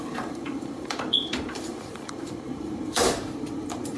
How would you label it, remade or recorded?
remade